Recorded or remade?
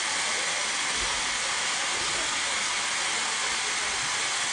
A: recorded